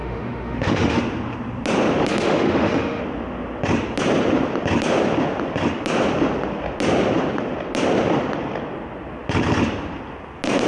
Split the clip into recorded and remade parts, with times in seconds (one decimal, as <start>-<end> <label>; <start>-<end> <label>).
0.0-1.0 remade; 1.0-2.1 recorded; 2.1-3.0 remade; 3.0-10.7 recorded